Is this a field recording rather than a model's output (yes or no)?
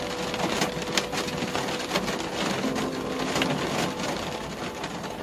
yes